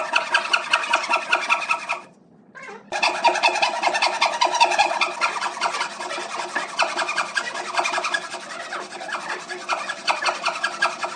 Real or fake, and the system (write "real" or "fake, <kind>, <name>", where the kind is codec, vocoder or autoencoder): real